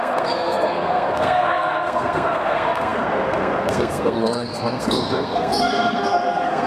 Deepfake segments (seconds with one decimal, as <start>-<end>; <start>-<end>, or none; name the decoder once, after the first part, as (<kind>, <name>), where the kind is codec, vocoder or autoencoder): 0.0-6.7 (codec, SNAC)